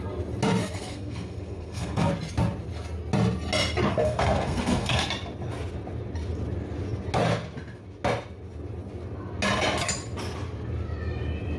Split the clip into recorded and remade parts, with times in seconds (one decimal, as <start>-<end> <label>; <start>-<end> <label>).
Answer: 0.0-0.6 recorded; 0.6-2.1 remade; 2.1-3.9 recorded; 3.9-5.0 remade; 5.0-11.6 recorded